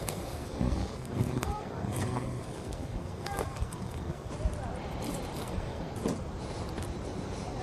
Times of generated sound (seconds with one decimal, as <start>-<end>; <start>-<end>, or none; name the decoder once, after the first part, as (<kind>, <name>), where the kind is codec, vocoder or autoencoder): 0.0-4.3 (codec, SNAC); 5.4-5.9